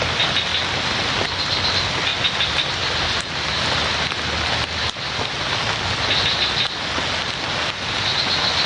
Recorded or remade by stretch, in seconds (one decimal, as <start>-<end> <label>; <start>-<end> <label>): 0.0-8.7 recorded